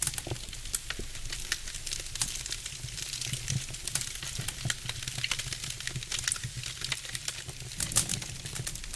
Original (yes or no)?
yes